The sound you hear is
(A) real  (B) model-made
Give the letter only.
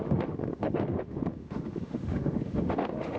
B